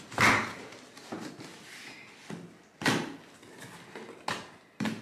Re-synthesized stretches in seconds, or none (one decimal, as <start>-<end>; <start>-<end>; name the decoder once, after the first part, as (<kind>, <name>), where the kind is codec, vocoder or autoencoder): 0.0-1.5 (vocoder, BigVGAN v2); 4.5-5.0